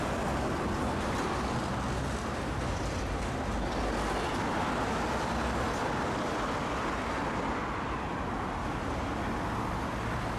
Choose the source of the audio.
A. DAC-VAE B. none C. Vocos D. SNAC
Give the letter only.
B